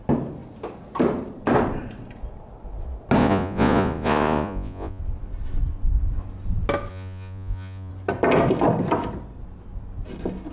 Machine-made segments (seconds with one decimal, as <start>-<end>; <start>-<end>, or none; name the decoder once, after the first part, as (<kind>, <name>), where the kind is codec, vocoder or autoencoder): 3.2-5.0 (vocoder, Vocos); 6.9-7.9